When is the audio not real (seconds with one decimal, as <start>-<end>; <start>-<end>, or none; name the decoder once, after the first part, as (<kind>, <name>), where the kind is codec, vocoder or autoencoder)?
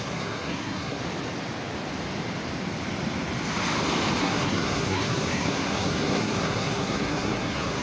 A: 0.0-1.0 (codec, SNAC); 4.2-7.8